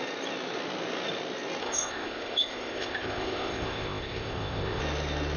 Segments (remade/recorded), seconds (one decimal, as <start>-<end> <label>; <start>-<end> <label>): 0.0-1.6 recorded; 1.6-4.8 remade; 4.8-5.4 recorded